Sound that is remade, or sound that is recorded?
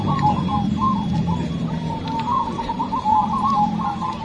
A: remade